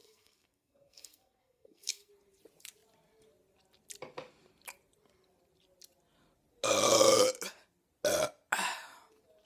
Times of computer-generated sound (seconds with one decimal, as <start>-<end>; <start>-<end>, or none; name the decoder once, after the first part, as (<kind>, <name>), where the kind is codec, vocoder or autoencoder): 0.0-2.1 (codec, SNAC)